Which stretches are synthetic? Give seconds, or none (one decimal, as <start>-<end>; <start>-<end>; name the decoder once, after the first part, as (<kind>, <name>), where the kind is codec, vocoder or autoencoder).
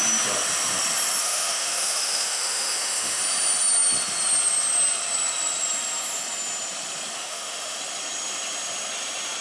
1.2-3.2 (autoencoder, DAC-VAE); 7.2-7.8